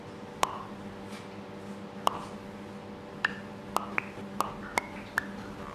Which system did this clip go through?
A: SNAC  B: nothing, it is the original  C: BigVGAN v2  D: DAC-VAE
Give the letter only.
B